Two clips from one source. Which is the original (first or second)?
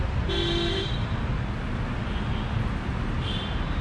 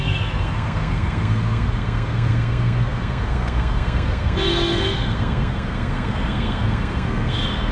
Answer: first